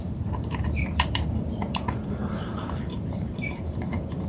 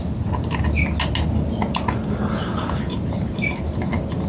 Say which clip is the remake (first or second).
first